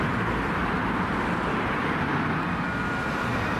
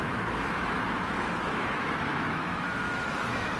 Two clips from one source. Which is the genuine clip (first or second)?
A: first